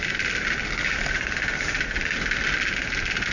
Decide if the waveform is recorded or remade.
recorded